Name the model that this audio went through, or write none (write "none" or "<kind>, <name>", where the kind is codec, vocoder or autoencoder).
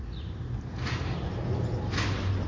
none